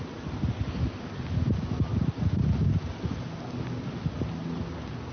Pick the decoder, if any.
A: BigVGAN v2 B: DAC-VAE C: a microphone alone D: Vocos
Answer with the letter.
C